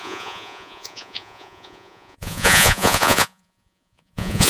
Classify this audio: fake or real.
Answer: fake